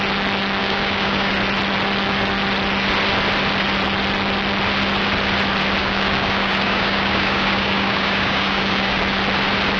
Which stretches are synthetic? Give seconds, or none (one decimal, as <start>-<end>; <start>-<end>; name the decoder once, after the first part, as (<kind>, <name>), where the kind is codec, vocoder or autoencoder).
0.6-1.3 (codec, DAC); 5.8-9.0